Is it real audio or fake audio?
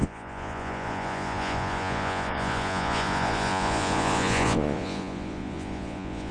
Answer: fake